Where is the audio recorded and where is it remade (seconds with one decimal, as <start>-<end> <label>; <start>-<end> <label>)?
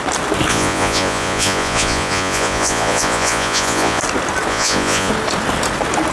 0.0-0.5 recorded; 0.5-4.0 remade; 4.0-4.5 recorded; 4.5-5.1 remade; 5.1-6.1 recorded